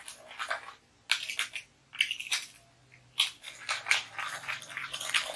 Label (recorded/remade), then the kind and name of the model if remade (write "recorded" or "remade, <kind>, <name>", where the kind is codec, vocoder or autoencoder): recorded